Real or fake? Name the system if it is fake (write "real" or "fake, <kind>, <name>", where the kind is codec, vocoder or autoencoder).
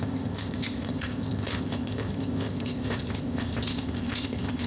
fake, codec, ZipCodec